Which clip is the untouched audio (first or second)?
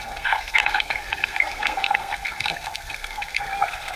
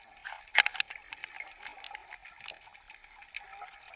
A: second